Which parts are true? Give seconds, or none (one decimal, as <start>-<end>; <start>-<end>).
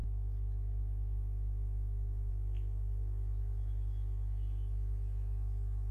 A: 0.0-5.9